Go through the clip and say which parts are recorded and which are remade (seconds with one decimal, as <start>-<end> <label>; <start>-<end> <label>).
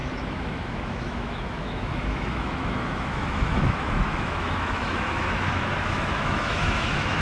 0.0-7.2 remade